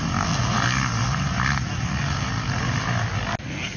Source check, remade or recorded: recorded